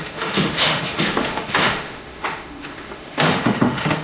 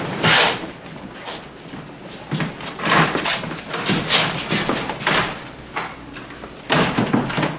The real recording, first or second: second